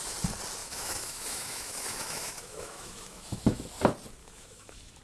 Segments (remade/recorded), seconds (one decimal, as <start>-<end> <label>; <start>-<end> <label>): 0.0-0.6 recorded; 0.6-3.6 remade; 3.6-4.2 recorded; 4.2-5.0 remade